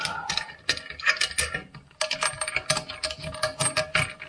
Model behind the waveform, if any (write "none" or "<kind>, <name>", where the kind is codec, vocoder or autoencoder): none